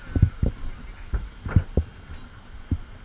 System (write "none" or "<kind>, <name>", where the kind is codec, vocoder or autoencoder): none